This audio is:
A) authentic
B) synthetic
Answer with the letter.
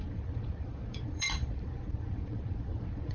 B